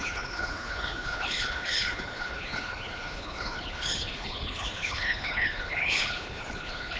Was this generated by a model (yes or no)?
yes